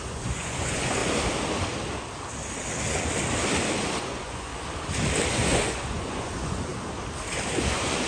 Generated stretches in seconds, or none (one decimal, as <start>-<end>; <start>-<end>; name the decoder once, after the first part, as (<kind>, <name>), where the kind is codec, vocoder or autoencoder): 0.0-1.0 (vocoder, Vocos); 4.0-4.5; 5.3-6.7; 7.6-8.1